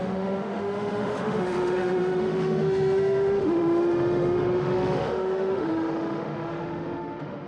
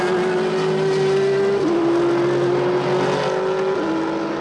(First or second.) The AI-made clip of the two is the first